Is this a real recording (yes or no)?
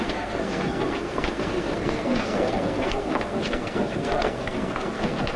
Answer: no